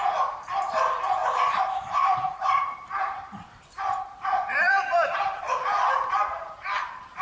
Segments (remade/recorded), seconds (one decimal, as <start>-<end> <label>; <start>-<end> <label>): 0.0-7.2 remade